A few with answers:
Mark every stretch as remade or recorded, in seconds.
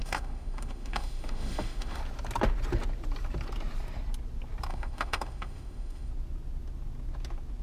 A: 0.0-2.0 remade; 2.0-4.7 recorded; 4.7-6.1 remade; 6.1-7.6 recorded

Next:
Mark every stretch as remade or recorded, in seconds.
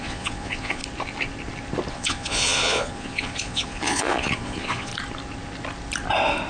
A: 0.0-0.8 remade; 0.8-1.9 recorded; 1.9-4.9 remade; 4.9-6.5 recorded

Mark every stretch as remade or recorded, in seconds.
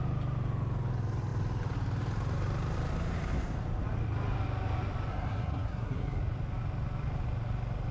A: 0.0-5.1 recorded; 5.1-6.2 remade; 6.2-7.9 recorded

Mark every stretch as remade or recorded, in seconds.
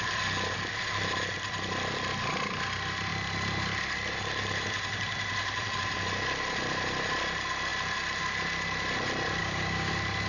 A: 0.0-9.4 recorded; 9.4-9.9 remade; 9.9-10.3 recorded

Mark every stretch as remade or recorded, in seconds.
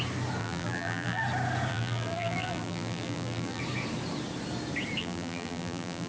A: 0.0-0.4 recorded; 0.4-1.2 remade; 1.2-1.7 recorded; 1.7-3.6 remade; 3.6-5.0 recorded; 5.0-6.1 remade